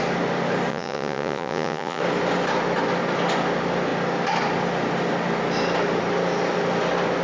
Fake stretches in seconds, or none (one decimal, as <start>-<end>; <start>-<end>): 0.7-2.0